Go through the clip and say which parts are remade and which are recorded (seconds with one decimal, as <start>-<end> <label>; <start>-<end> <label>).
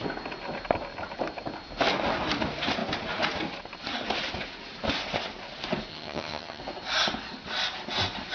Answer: 0.0-5.9 recorded; 5.9-6.6 remade; 6.6-8.3 recorded